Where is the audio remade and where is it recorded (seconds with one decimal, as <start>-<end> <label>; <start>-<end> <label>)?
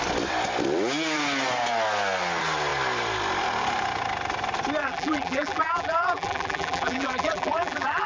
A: 0.0-4.8 recorded; 4.8-8.1 remade